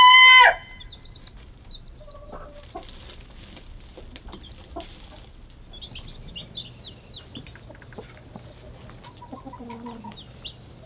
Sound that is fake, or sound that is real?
real